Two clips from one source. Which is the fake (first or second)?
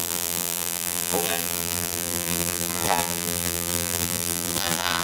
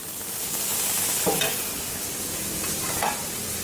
first